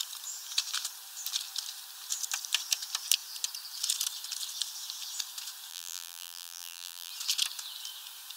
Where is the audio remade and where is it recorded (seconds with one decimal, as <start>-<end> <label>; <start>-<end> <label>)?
0.0-5.7 recorded; 5.7-7.1 remade; 7.1-8.4 recorded